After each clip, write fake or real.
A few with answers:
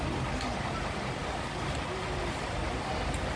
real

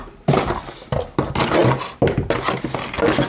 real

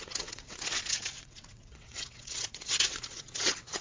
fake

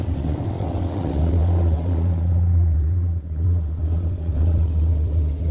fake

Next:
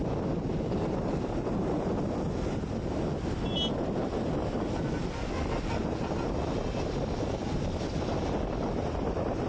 real